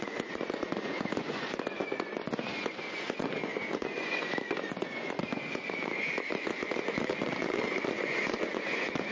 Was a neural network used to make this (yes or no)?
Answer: yes